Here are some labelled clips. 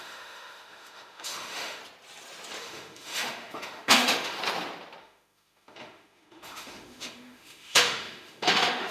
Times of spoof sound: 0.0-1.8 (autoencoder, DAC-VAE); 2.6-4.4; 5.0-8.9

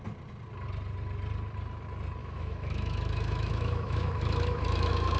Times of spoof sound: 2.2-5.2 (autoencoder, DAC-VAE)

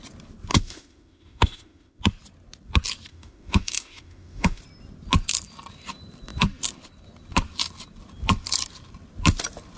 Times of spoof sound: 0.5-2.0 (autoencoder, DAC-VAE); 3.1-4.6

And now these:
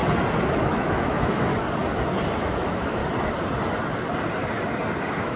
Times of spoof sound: 0.5-1.5 (autoencoder, DAC-VAE); 2.3-3.0; 5.0-5.4

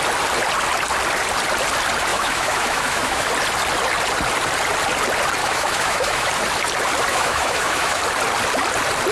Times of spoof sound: 2.1-3.3 (autoencoder, DAC-VAE); 5.4-6.3; 7.1-8.0

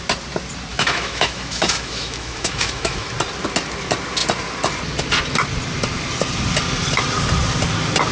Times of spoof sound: 0.7-3.1 (autoencoder, DAC-VAE)